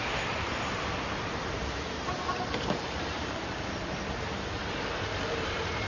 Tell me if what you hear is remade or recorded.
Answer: remade